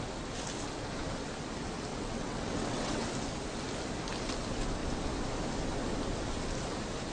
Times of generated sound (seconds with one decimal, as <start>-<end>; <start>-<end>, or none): 1.9-3.1